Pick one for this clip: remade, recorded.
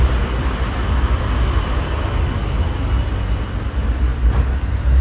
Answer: recorded